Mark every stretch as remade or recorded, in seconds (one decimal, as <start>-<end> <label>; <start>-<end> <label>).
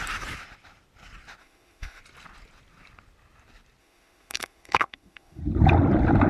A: 0.0-1.4 recorded; 1.4-2.0 remade; 2.0-3.8 recorded; 3.8-5.4 remade; 5.4-6.3 recorded